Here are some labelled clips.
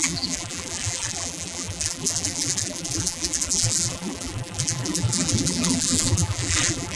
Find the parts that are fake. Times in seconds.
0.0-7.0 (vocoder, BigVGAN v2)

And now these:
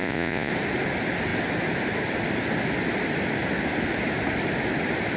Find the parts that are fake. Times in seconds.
0.0-0.5 (vocoder, Vocos)